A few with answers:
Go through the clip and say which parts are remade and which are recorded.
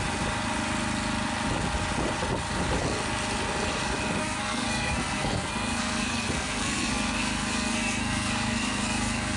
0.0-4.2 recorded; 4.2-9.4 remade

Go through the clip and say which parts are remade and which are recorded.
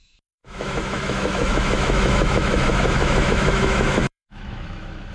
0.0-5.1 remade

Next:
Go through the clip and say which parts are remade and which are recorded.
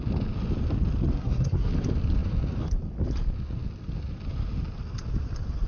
0.0-1.1 recorded; 1.1-1.7 remade; 1.7-5.7 recorded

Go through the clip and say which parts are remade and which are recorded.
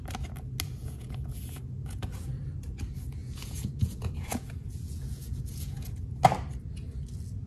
0.0-0.8 recorded; 0.8-2.3 remade; 2.3-3.2 recorded; 3.2-6.2 remade; 6.2-7.5 recorded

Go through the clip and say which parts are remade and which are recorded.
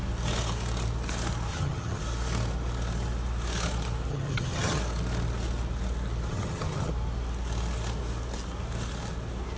0.0-1.5 recorded; 1.5-2.0 remade; 2.0-4.1 recorded; 4.1-4.8 remade; 4.8-6.3 recorded; 6.3-6.9 remade; 6.9-9.6 recorded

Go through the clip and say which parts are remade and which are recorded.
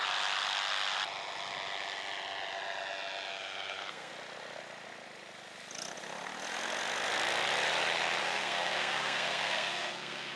0.0-3.3 recorded; 3.3-4.1 remade; 4.1-8.2 recorded; 8.2-10.4 remade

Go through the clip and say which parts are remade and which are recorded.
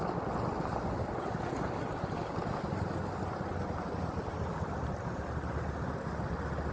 0.0-6.7 recorded